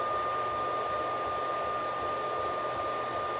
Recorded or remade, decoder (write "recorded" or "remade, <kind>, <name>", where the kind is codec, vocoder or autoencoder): recorded